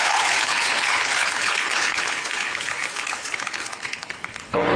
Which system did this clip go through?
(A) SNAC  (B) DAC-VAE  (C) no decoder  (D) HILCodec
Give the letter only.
D